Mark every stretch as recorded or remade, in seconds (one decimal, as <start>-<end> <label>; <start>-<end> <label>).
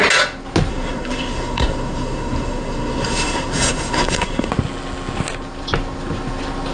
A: 0.0-0.7 recorded; 0.7-4.5 remade; 4.5-6.7 recorded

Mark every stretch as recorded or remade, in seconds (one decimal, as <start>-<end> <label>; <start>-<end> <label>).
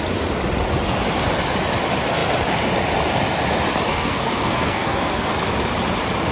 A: 0.0-3.9 recorded; 3.9-5.3 remade; 5.3-6.3 recorded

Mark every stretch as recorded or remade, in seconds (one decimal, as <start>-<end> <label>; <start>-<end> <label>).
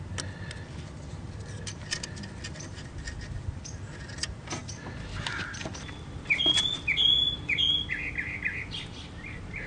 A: 0.0-9.7 recorded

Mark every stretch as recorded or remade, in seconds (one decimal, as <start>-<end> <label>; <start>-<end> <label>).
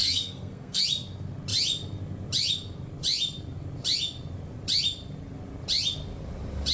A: 0.0-0.8 remade; 0.8-6.7 recorded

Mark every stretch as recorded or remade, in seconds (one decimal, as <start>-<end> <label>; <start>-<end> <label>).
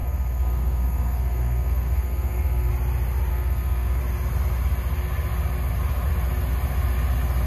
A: 0.0-2.7 remade; 2.7-3.3 recorded; 3.3-4.0 remade; 4.0-7.5 recorded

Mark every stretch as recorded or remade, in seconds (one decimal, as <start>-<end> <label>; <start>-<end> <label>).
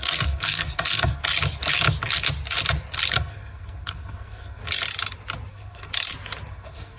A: 0.0-1.2 remade; 1.2-3.1 recorded; 3.1-4.6 remade; 4.6-5.5 recorded; 5.5-5.9 remade; 5.9-6.5 recorded; 6.5-7.0 remade